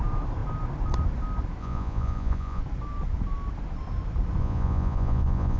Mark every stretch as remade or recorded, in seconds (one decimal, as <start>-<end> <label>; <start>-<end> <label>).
0.0-1.6 recorded; 1.6-2.6 remade; 2.6-4.4 recorded; 4.4-5.6 remade